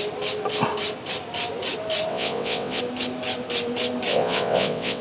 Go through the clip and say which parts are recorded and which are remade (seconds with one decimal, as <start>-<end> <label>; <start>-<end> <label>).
0.0-2.1 recorded; 2.1-2.8 remade; 2.8-4.1 recorded; 4.1-5.0 remade